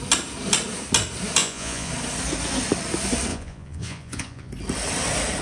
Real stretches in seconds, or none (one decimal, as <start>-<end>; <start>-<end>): 0.0-1.4; 1.9-3.3; 4.5-5.4

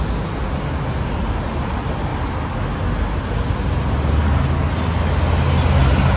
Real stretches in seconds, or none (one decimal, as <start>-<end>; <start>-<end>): 0.0-6.2

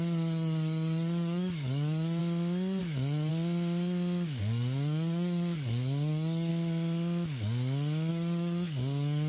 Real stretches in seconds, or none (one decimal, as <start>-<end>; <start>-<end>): 2.2-2.8; 3.3-4.4; 6.5-8.1

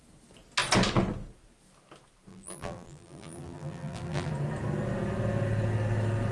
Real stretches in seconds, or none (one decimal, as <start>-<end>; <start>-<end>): 0.0-2.3; 4.3-6.3